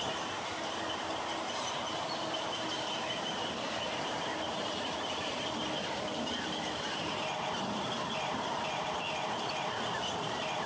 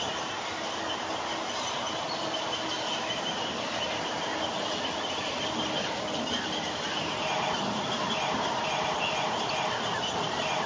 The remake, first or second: first